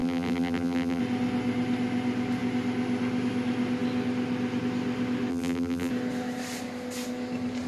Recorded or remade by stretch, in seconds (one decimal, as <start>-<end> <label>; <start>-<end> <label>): 0.0-1.0 remade; 1.0-5.3 recorded; 5.3-5.9 remade; 5.9-7.7 recorded